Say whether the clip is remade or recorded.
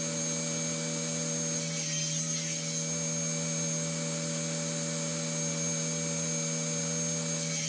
recorded